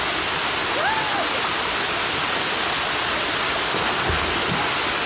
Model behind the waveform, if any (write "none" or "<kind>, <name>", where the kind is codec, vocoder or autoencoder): none